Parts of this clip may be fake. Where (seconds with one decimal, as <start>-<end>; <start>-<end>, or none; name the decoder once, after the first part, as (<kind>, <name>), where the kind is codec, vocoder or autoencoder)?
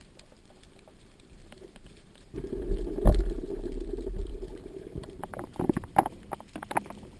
1.4-3.5 (vocoder, BigVGAN v2); 4.3-6.2